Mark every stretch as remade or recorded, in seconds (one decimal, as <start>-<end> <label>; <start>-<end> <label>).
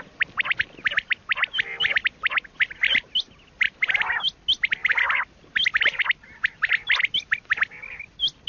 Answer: 0.0-8.5 recorded